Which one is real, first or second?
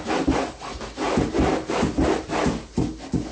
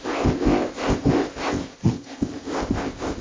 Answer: first